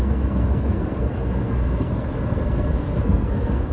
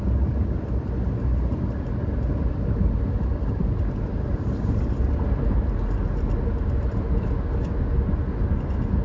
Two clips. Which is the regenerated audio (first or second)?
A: first